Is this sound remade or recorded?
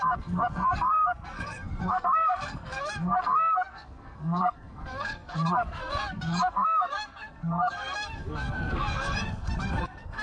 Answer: remade